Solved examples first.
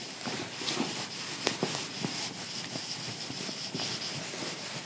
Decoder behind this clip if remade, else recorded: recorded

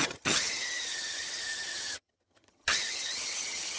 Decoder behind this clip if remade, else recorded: remade, vocoder, HiFi-GAN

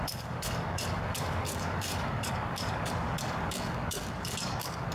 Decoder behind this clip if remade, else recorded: remade, codec, DAC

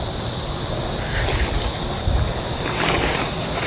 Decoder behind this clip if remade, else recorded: recorded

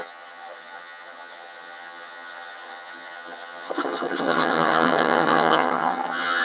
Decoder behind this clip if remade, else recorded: remade, vocoder, HiFi-GAN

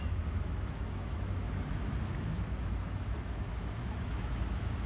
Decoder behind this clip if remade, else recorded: remade, autoencoder, DAC-VAE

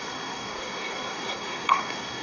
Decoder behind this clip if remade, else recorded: remade, codec, SNAC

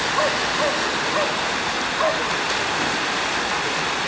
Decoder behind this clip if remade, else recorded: recorded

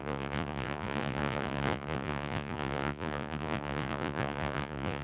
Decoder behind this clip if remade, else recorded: remade, vocoder, Vocos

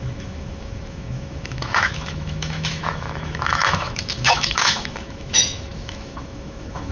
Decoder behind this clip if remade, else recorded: remade, autoencoder, DAC-VAE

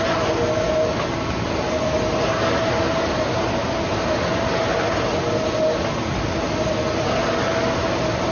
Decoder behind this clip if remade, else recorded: recorded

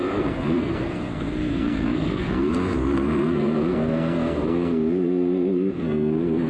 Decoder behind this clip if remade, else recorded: remade, codec, SNAC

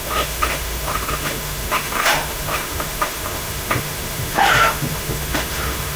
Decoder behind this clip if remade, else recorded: remade, autoencoder, DAC-VAE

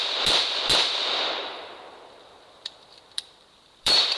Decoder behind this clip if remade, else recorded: remade, vocoder, BigVGAN v2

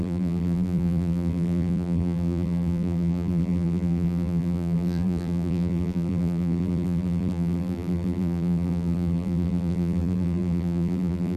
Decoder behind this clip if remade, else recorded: remade, vocoder, BigVGAN v2